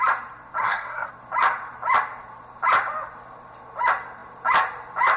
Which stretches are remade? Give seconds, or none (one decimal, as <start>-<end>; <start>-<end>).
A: 0.6-1.1